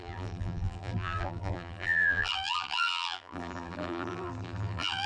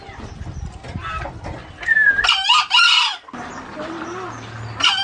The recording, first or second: second